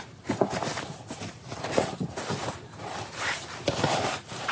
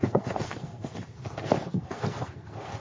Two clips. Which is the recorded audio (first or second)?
first